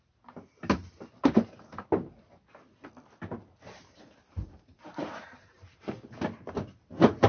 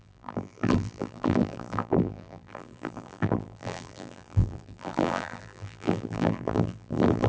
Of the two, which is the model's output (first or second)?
second